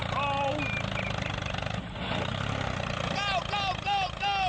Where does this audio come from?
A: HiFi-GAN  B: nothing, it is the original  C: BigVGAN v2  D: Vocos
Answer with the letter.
B